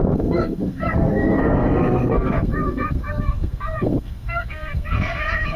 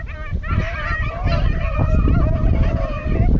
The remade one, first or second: first